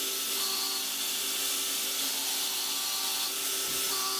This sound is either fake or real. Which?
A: real